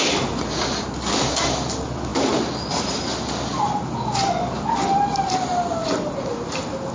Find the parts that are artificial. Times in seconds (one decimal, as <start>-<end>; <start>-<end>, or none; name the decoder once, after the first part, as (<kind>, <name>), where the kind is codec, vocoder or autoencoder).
none